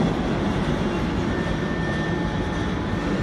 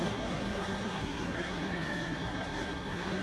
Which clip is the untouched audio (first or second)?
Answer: first